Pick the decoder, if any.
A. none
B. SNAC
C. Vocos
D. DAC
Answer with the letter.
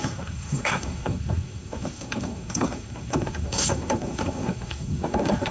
B